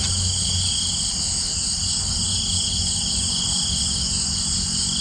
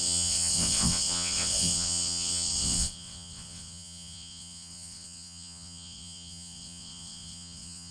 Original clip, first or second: first